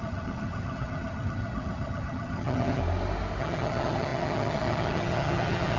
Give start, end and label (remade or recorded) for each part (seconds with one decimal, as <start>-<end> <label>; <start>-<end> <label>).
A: 0.0-2.8 remade; 2.8-3.4 recorded; 3.4-5.8 remade